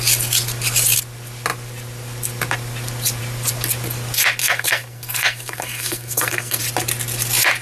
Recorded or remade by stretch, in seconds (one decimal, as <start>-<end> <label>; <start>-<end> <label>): 0.0-4.4 recorded; 4.4-6.6 remade; 6.6-7.6 recorded